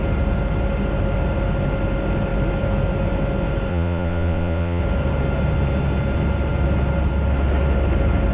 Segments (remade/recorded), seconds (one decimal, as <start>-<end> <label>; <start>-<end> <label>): 0.0-3.7 recorded; 3.7-4.8 remade; 4.8-8.3 recorded